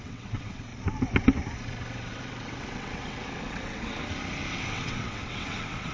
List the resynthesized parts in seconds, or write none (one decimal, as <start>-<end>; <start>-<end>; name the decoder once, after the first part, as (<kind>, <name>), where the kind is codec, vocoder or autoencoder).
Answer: 0.0-0.7 (vocoder, WaveNeXt); 2.1-4.0; 4.5-5.9